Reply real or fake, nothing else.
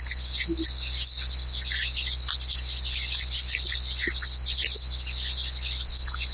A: real